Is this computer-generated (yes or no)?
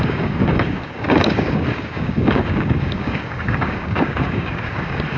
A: yes